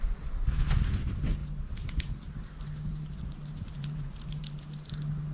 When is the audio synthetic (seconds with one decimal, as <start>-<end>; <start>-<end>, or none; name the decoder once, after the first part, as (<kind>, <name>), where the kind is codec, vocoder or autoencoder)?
1.4-4.6 (vocoder, BigVGAN v2)